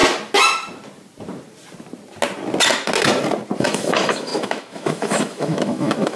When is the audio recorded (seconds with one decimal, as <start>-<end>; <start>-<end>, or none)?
0.0-3.6